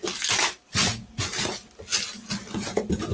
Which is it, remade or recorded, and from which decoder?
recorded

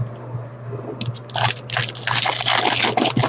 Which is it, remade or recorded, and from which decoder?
recorded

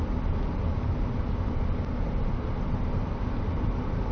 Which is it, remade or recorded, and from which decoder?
recorded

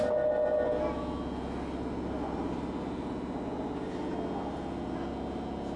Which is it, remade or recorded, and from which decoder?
recorded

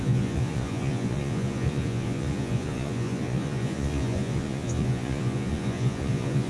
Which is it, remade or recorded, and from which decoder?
remade, vocoder, Vocos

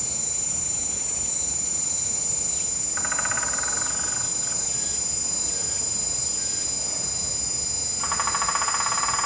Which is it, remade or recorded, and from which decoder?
recorded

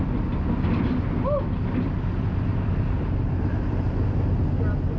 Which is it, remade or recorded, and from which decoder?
recorded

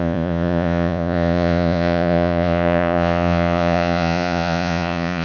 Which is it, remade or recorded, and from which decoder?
remade, vocoder, Vocos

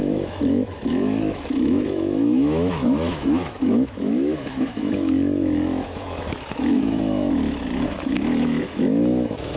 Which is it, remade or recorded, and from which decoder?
remade, autoencoder, DAC-VAE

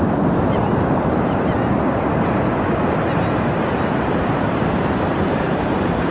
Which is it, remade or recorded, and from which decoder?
remade, vocoder, BigVGAN v2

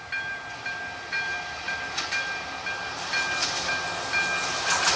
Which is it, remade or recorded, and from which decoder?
recorded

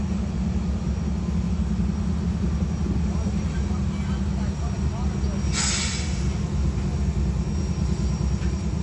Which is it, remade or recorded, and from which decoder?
recorded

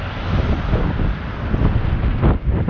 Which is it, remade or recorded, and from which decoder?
remade, vocoder, BigVGAN v2